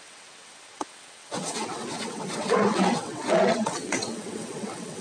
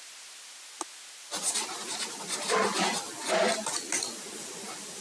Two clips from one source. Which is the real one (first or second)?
second